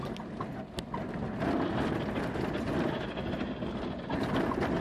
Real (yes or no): yes